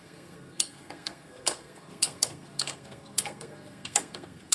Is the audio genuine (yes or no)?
no